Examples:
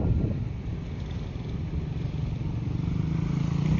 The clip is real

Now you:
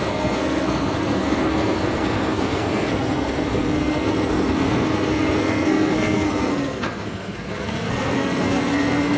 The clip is fake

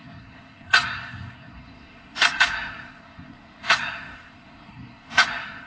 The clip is fake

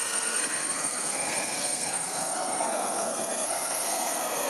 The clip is fake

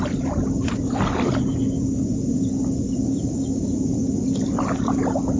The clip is real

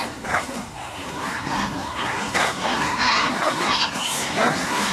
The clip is fake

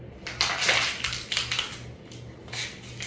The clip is real